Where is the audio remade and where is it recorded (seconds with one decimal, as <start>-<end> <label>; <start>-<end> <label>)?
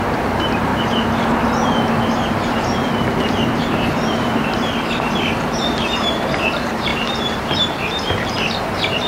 0.0-0.7 remade; 0.7-2.3 recorded; 2.3-9.1 remade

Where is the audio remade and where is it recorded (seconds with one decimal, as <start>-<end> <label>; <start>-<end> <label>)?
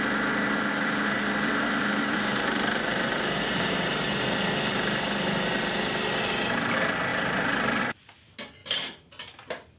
0.0-2.1 recorded; 2.1-3.9 remade; 3.9-8.6 recorded; 8.6-9.1 remade; 9.1-9.8 recorded